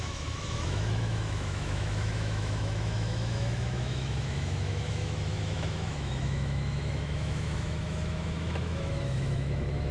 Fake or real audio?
fake